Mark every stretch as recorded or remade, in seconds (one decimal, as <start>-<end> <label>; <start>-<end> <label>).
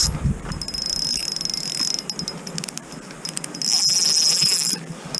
0.0-5.2 recorded